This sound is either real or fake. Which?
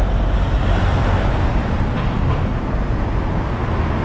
real